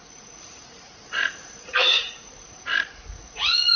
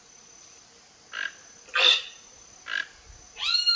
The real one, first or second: second